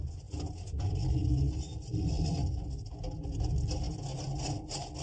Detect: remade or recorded recorded